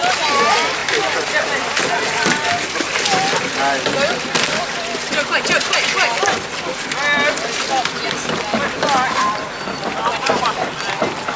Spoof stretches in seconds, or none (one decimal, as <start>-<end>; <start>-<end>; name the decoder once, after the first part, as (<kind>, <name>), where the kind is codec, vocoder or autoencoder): none